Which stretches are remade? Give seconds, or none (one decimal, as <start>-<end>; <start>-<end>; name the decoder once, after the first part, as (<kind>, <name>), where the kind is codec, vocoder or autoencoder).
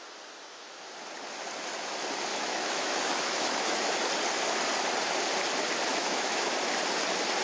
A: 2.3-4.1 (autoencoder, DAC-VAE); 5.9-6.5